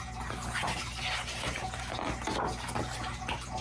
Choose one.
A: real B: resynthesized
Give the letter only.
A